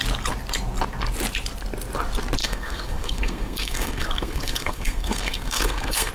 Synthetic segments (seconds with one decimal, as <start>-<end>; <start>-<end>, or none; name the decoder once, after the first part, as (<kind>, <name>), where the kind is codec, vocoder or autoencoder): 2.4-6.1 (codec, SNAC)